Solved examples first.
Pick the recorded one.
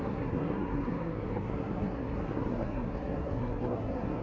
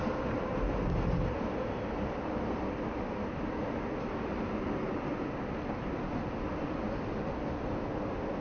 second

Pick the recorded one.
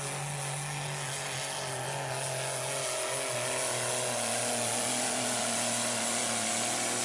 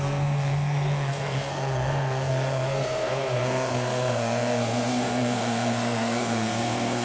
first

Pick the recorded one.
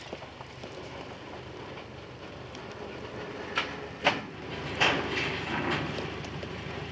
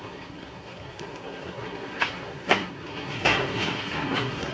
first